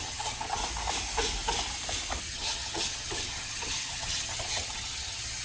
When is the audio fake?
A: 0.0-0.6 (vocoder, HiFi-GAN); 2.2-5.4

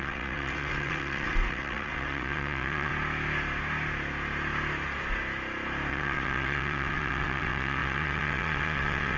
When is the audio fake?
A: 0.0-2.9 (vocoder, WaveNeXt); 5.9-9.2

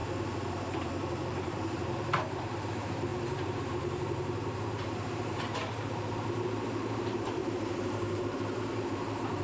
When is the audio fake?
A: 0.5-9.4 (vocoder, BigVGAN v2)

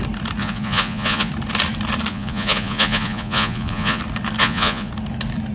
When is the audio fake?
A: 0.4-1.3 (vocoder, Vocos); 2.1-4.0; 4.4-4.9

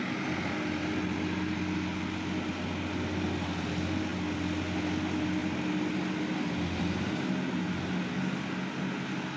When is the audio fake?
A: none

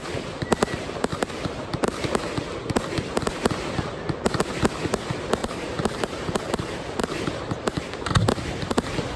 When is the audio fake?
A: 1.1-2.2 (vocoder, BigVGAN v2); 5.4-7.3

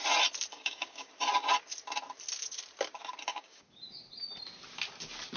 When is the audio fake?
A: 0.5-1.1 (codec, DAC); 3.3-3.8

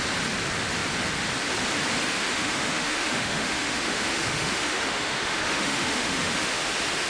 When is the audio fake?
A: 2.3-6.6 (autoencoder, DAC-VAE)